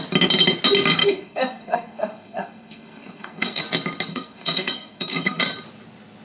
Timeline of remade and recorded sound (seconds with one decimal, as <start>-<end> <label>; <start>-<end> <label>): 0.0-1.0 recorded; 1.0-3.6 remade; 3.6-4.1 recorded; 4.1-5.4 remade; 5.4-6.2 recorded